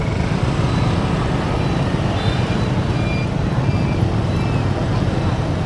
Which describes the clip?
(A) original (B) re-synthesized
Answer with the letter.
A